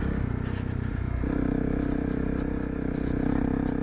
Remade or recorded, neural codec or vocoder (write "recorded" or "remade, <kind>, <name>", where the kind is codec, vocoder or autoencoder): recorded